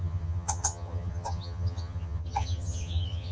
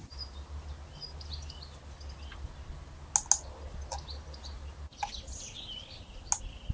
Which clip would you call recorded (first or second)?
second